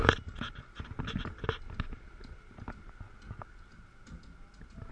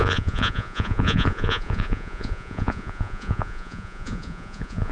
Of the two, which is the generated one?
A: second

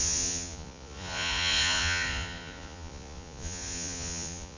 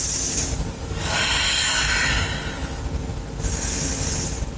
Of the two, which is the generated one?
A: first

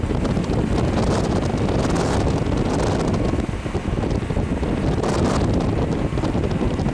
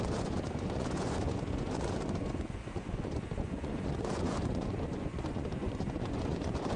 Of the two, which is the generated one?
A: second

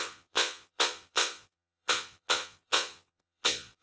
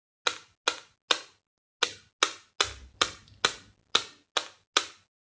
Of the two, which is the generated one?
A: first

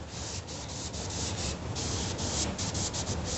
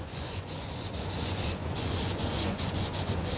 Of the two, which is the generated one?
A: second